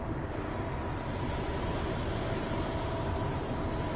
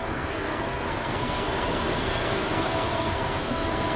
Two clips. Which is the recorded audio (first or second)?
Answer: first